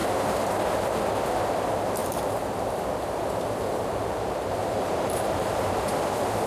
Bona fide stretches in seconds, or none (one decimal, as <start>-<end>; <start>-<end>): 0.0-2.0; 5.9-6.5